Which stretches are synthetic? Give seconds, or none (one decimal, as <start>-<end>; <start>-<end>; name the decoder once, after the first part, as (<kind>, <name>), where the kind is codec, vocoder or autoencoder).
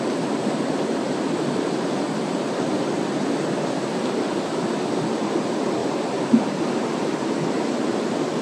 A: none